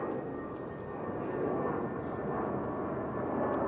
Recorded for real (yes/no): yes